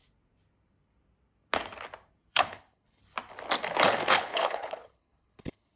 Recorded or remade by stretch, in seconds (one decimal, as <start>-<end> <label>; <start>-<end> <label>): 0.0-2.3 recorded; 2.3-3.0 remade; 3.0-4.1 recorded; 4.1-5.8 remade